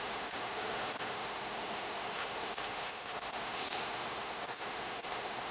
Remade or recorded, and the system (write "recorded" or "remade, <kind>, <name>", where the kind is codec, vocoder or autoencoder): remade, autoencoder, DAC-VAE